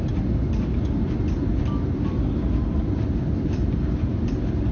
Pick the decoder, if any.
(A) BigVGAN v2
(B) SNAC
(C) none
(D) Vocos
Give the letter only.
C